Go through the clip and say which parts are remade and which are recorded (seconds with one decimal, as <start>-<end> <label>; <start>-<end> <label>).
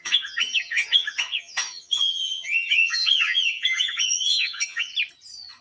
0.0-4.9 remade; 4.9-5.6 recorded